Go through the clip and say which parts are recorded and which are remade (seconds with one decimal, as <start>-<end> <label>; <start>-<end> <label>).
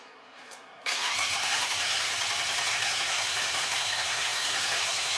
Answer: 0.0-2.1 remade; 2.1-2.7 recorded; 2.7-5.2 remade